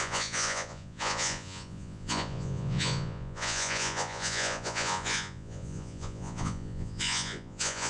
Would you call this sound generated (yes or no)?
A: yes